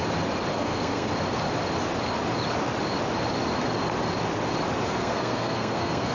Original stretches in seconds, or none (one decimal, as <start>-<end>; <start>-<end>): 0.0-0.5; 1.1-4.9